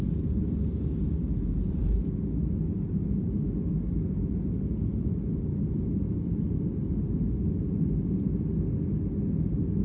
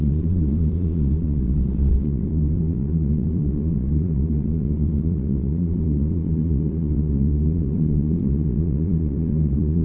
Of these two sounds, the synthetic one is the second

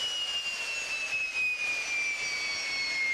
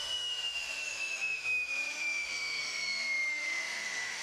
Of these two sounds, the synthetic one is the second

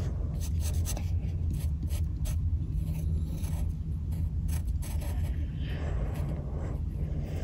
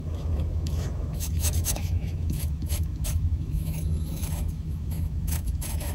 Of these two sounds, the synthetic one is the second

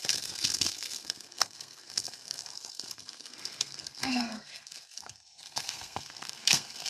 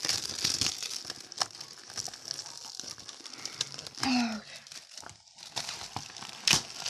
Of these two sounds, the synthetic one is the first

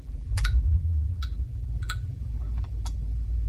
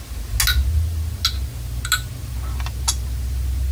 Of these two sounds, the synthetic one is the first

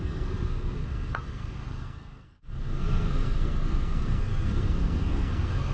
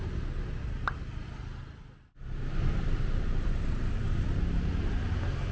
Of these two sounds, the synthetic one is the first